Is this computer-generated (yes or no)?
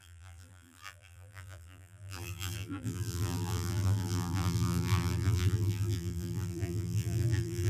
yes